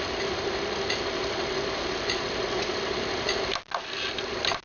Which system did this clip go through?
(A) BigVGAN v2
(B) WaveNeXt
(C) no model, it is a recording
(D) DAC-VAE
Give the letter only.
C